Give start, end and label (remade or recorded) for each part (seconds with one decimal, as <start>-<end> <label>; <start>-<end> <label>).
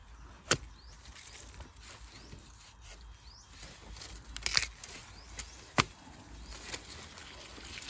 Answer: 0.0-7.9 recorded